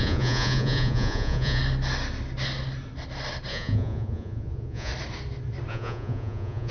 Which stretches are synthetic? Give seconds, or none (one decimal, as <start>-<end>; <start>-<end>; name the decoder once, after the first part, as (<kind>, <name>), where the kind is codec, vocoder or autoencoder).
0.0-1.6 (vocoder, Vocos); 3.5-4.9; 5.7-6.7